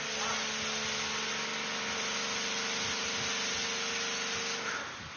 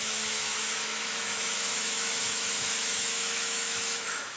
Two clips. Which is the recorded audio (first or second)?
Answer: first